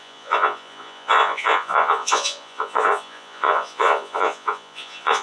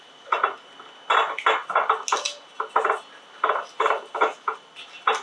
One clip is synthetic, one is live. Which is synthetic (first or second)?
first